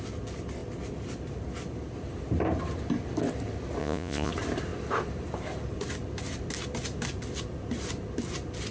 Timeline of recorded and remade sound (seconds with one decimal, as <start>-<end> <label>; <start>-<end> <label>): 0.0-3.8 recorded; 3.8-4.3 remade; 4.3-8.7 recorded